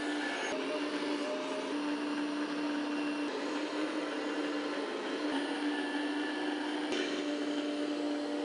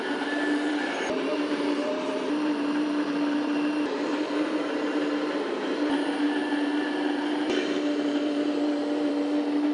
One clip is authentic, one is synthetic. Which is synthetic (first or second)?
second